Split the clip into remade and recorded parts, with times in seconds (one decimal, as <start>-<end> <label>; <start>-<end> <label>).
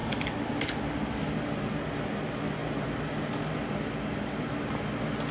0.0-5.3 recorded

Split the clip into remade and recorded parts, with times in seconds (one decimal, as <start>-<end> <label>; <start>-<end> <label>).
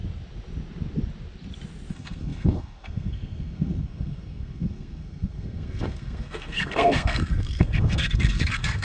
0.0-1.9 recorded; 1.9-8.8 remade